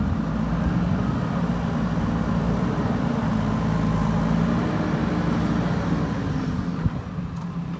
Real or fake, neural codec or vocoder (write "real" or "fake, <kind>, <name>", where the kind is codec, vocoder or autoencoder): real